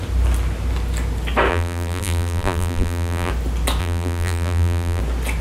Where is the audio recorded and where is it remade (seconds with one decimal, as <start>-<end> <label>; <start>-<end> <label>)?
0.0-1.5 recorded; 1.5-3.3 remade; 3.3-3.8 recorded; 3.8-5.0 remade; 5.0-5.4 recorded